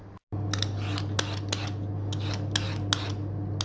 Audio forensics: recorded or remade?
recorded